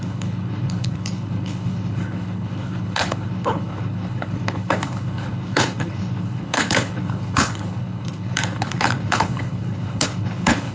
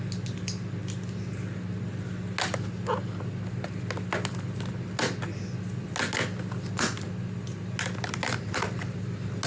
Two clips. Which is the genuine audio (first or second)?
second